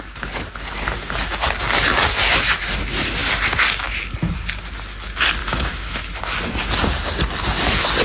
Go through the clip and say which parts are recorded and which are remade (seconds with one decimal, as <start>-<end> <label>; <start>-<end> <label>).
0.0-5.4 recorded; 5.4-6.2 remade; 6.2-8.0 recorded